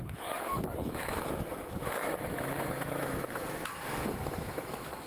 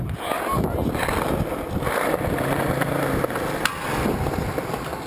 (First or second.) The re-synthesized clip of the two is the first